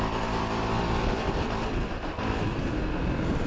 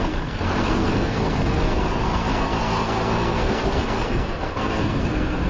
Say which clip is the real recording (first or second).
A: first